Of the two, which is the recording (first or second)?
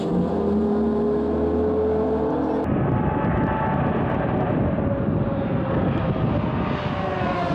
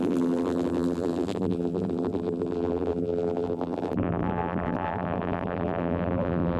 first